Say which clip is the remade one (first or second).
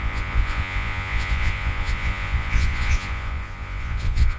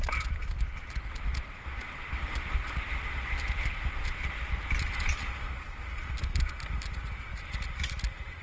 first